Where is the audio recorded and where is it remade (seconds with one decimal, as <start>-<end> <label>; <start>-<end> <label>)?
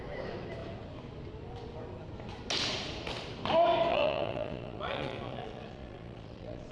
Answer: 0.0-3.9 recorded; 3.9-6.7 remade